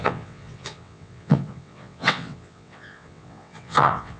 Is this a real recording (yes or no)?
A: no